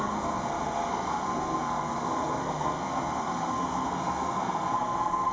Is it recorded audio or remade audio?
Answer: remade